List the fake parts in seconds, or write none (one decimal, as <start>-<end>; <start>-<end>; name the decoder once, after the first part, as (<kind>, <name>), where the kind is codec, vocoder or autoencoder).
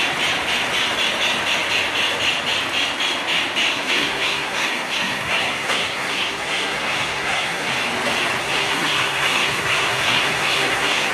3.7-7.7 (codec, SNAC); 8.4-11.1